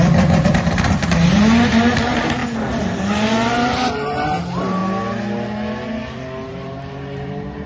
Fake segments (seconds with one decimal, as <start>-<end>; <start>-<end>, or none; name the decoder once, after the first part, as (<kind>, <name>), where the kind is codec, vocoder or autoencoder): 0.0-2.4 (vocoder, BigVGAN v2); 3.1-4.8; 6.5-7.7